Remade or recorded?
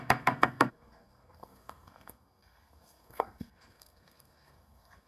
remade